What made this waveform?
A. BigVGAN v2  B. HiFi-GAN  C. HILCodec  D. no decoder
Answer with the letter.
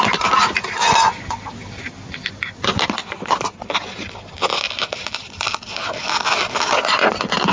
D